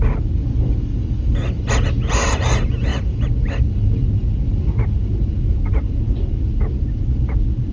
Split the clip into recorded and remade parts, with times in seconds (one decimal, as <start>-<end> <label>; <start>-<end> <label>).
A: 0.0-0.9 recorded; 0.9-1.6 remade; 1.6-2.9 recorded; 2.9-3.7 remade; 3.7-7.7 recorded